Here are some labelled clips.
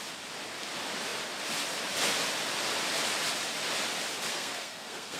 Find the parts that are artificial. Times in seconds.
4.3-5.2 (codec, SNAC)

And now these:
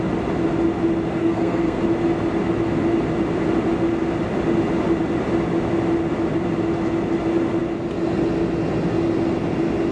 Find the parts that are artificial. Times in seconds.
1.2-1.8 (codec, SNAC)

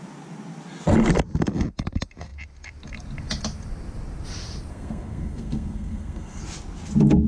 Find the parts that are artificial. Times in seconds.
4.7-6.4 (codec, SNAC)

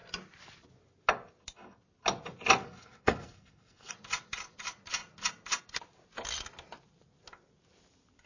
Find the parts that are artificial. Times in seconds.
2.6-3.9 (codec, SNAC)